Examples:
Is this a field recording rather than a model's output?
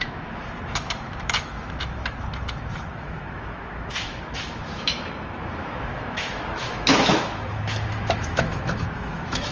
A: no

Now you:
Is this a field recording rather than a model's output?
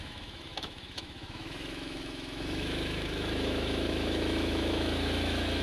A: no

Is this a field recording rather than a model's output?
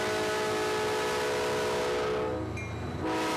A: yes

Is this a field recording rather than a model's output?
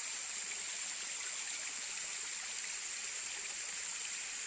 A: yes